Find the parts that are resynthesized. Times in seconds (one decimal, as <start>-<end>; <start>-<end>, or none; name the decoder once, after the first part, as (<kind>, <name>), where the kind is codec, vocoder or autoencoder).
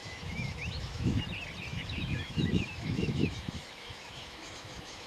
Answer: 0.0-1.2 (autoencoder, DAC-VAE); 1.7-5.1